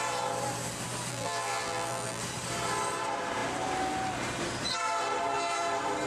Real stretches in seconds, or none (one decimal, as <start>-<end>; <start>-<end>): 0.0-1.1; 2.2-6.1